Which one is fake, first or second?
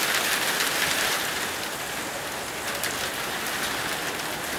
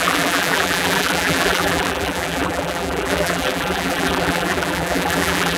second